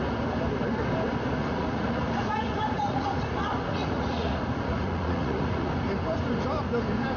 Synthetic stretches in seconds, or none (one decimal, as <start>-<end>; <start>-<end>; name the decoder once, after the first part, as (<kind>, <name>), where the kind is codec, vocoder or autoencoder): 1.4-5.7 (vocoder, Vocos)